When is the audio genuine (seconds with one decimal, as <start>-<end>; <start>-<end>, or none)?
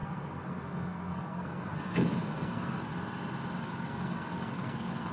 2.9-3.6